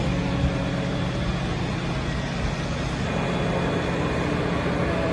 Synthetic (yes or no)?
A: no